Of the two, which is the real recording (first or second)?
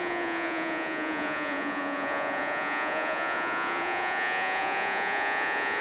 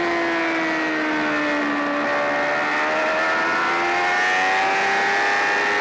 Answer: second